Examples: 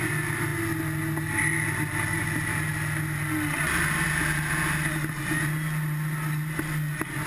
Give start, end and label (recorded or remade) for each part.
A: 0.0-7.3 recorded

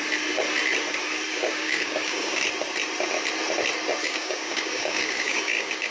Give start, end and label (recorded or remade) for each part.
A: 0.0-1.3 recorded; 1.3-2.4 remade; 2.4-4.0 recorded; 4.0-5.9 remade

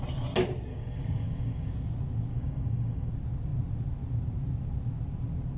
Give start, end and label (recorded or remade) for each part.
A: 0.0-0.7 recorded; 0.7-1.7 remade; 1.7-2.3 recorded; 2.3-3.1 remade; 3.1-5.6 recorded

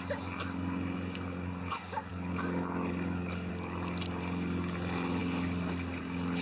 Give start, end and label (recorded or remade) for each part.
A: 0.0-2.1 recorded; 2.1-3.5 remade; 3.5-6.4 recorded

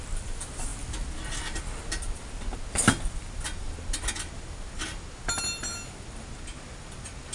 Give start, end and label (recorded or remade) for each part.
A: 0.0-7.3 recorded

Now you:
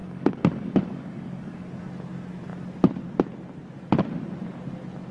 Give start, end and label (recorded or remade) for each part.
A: 0.0-1.7 remade; 1.7-5.1 recorded

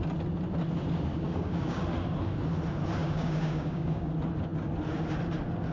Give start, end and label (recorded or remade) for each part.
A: 0.0-1.1 recorded; 1.1-1.8 remade; 1.8-3.0 recorded; 3.0-4.1 remade; 4.1-5.7 recorded

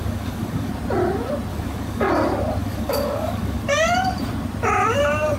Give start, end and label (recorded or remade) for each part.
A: 0.0-0.7 remade; 0.7-1.5 recorded; 1.5-2.1 remade; 2.1-2.6 recorded; 2.6-3.6 remade; 3.6-5.4 recorded